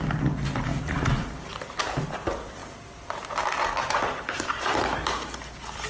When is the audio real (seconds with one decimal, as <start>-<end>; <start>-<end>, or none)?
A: 0.0-0.7; 1.3-5.9